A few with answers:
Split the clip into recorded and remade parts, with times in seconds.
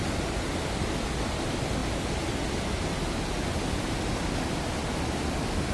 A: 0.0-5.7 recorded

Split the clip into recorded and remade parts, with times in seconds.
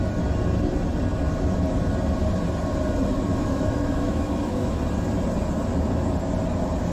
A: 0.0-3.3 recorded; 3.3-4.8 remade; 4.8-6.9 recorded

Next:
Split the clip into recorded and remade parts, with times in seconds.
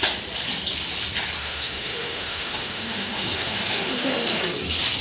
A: 0.0-1.4 recorded; 1.4-4.4 remade; 4.4-5.0 recorded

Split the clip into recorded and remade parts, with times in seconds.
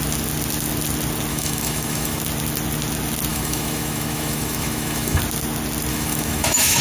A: 0.0-1.3 recorded; 1.3-2.2 remade; 2.2-3.3 recorded; 3.3-5.2 remade; 5.2-5.9 recorded; 5.9-6.8 remade